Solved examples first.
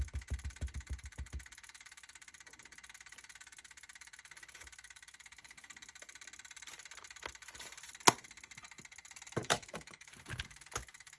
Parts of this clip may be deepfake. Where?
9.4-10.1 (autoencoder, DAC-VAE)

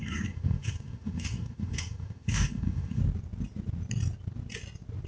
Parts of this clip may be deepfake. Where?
0.0-3.0 (autoencoder, DAC-VAE)

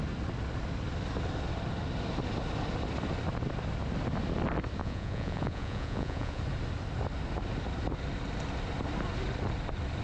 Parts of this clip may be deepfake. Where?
4.8-6.4 (vocoder, Vocos)

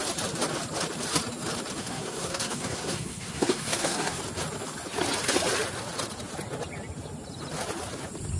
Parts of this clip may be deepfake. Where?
1.8-4.2 (codec, SNAC)